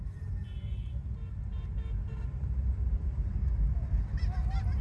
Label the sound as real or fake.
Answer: real